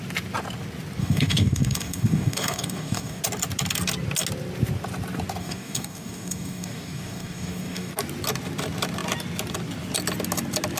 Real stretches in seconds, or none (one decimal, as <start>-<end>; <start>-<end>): 0.0-1.0; 3.2-5.4; 7.9-10.8

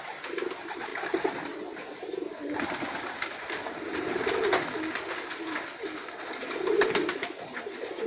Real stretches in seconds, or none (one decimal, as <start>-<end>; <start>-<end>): 0.0-8.1

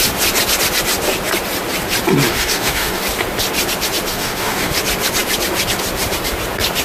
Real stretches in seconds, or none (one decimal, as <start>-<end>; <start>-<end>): 0.0-2.3; 3.0-4.1; 4.7-6.8

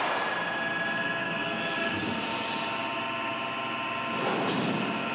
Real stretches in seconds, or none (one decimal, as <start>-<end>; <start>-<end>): 0.0-1.2; 2.0-5.1